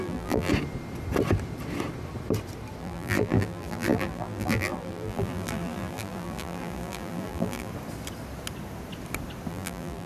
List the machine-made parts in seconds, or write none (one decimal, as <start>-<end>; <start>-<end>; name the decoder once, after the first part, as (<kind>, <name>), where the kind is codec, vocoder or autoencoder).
0.0-0.5 (vocoder, BigVGAN v2); 2.8-7.7; 9.5-10.1

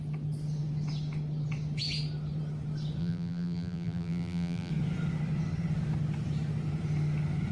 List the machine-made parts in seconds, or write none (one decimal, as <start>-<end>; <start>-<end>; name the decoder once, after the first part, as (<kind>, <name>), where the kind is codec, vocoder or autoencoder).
3.0-4.7 (vocoder, BigVGAN v2)